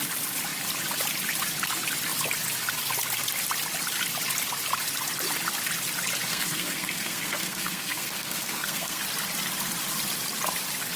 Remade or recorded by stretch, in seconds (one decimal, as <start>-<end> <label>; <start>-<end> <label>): 0.0-6.3 recorded; 6.3-9.0 remade; 9.0-11.0 recorded